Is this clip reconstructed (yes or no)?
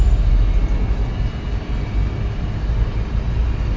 no